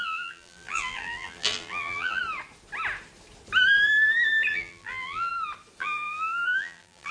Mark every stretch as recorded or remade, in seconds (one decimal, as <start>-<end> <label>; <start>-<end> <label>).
0.0-2.2 remade; 2.2-4.5 recorded; 4.5-5.3 remade; 5.3-5.8 recorded; 5.8-7.1 remade